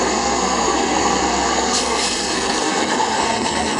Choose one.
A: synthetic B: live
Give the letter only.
A